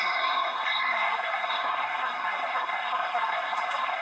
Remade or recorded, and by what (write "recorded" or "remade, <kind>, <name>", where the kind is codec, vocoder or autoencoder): remade, codec, SNAC